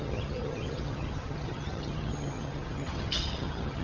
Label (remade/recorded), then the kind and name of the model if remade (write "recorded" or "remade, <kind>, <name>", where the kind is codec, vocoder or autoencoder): remade, vocoder, HiFi-GAN